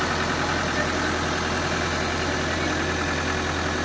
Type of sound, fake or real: real